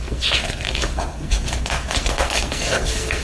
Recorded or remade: remade